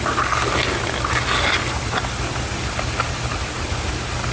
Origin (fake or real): real